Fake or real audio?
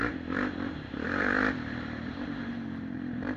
fake